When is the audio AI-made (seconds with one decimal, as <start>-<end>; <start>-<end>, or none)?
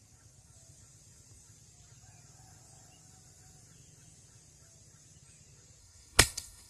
5.8-6.7